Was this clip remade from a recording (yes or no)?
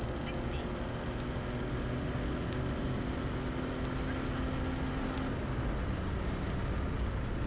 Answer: no